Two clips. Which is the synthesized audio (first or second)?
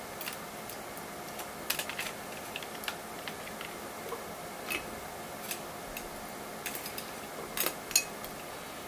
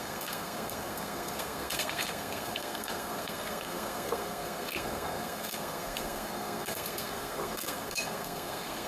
second